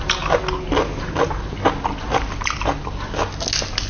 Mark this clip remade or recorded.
recorded